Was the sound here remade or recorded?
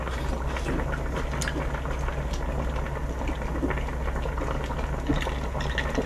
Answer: recorded